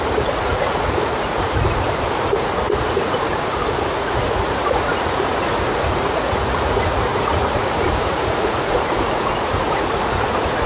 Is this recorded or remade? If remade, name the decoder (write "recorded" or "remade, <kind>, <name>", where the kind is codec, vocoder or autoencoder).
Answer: remade, vocoder, Vocos